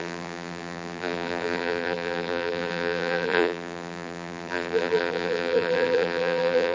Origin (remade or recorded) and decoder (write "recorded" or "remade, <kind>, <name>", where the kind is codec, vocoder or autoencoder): remade, vocoder, BigVGAN v2